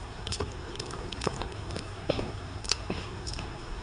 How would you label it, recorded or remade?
remade